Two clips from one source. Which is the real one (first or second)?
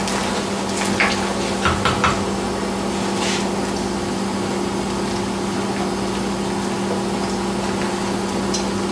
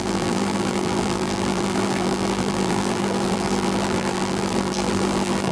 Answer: first